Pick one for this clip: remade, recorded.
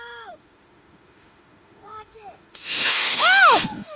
remade